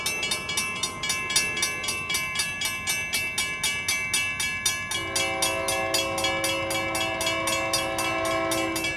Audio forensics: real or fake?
real